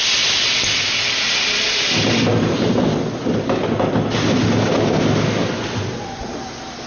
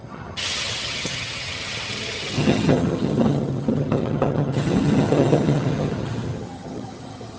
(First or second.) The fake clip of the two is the second